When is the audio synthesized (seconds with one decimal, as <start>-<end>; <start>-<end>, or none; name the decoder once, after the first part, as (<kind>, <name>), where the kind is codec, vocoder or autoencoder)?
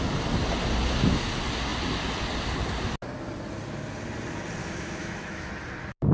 4.6-5.5 (autoencoder, DAC-VAE)